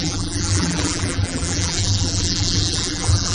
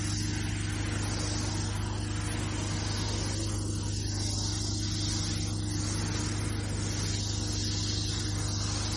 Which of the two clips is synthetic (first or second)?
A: first